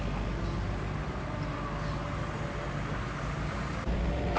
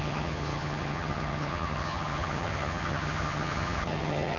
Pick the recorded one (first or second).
first